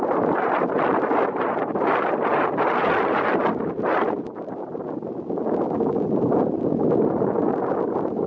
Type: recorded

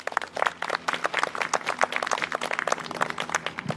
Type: recorded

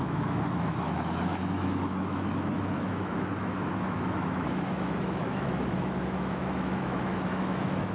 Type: remade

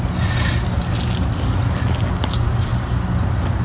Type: recorded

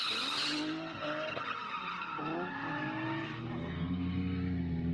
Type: recorded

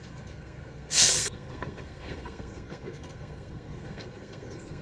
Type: remade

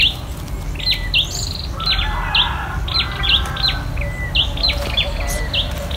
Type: recorded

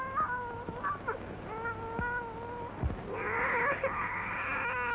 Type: recorded